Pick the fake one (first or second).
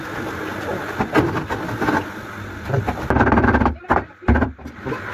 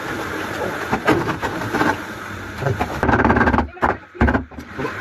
second